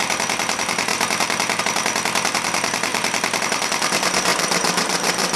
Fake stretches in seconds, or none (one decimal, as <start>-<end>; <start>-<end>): 0.9-1.6; 2.9-3.4; 4.3-4.8